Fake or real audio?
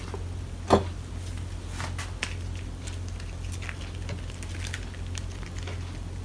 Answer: real